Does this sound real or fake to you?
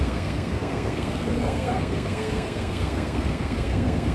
fake